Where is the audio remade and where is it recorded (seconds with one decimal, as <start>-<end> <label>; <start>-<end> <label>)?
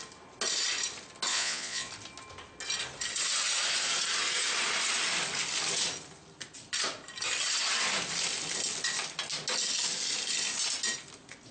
0.0-1.3 recorded; 1.3-1.9 remade; 1.9-11.5 recorded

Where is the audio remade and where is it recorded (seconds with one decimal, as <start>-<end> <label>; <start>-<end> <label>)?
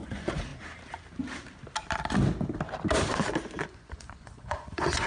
0.0-0.5 remade; 0.5-3.6 recorded; 3.6-5.1 remade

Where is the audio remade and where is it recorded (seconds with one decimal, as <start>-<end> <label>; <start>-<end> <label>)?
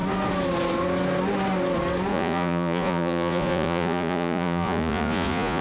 0.0-2.1 recorded; 2.1-5.6 remade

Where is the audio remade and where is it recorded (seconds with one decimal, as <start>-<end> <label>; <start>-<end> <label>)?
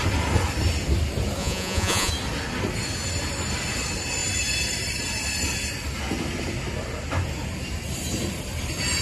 0.0-1.4 recorded; 1.4-2.1 remade; 2.1-9.0 recorded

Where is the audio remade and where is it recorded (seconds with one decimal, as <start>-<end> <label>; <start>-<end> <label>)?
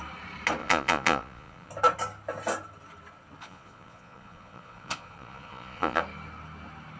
0.0-0.6 recorded; 0.6-1.7 remade; 1.7-3.4 recorded; 3.4-6.0 remade; 6.0-7.0 recorded